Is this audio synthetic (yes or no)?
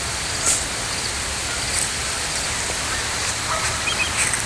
no